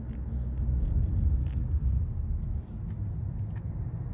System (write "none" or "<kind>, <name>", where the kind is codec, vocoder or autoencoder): none